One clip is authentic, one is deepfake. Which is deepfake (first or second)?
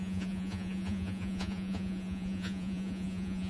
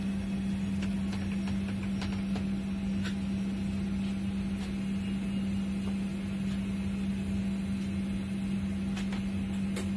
first